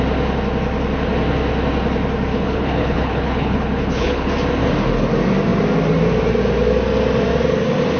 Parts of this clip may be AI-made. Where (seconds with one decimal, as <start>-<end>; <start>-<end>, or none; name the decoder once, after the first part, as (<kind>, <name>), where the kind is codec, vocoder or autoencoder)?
2.3-4.3 (codec, HILCodec)